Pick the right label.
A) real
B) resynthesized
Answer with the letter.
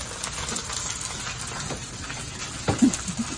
A